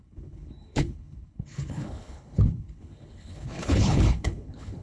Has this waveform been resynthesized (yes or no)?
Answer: yes